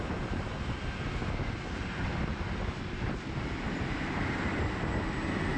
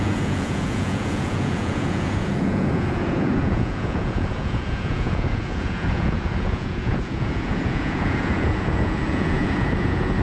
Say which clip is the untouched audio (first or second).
first